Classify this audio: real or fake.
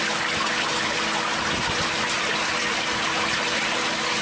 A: real